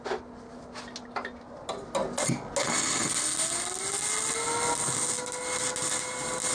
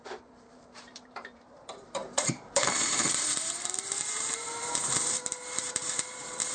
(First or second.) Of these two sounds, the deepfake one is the second